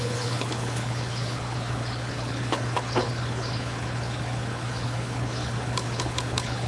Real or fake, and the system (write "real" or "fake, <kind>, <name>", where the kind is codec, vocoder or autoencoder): fake, codec, HILCodec